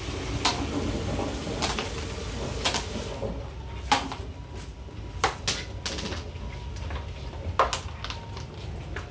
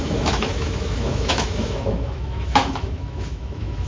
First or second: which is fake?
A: second